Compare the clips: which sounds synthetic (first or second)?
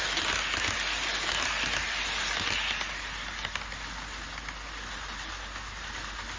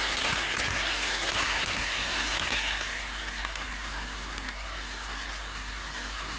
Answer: second